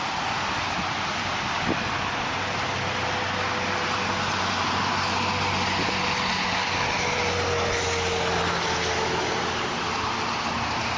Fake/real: real